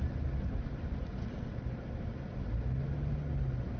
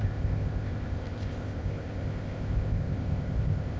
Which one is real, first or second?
first